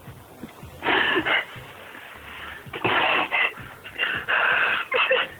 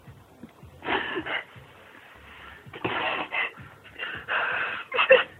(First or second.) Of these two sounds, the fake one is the second